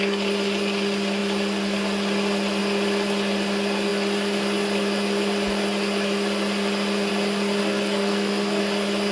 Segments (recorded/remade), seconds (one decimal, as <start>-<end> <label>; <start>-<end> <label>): 0.0-7.6 recorded; 7.6-8.6 remade; 8.6-9.1 recorded